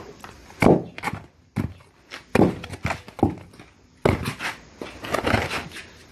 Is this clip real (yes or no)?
yes